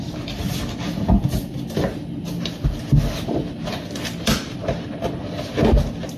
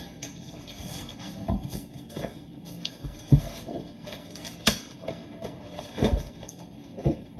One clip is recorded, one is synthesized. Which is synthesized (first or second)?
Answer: second